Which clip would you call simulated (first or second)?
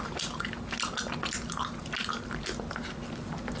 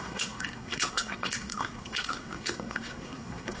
second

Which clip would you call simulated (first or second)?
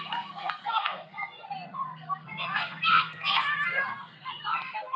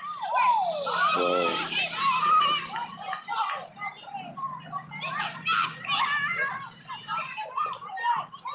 first